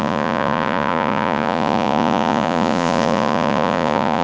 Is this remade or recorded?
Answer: remade